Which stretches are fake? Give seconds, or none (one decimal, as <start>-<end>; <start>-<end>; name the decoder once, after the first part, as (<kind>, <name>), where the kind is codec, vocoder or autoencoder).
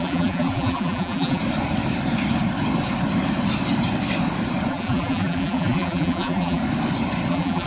0.0-1.4 (vocoder, BigVGAN v2); 4.7-6.6; 7.3-7.7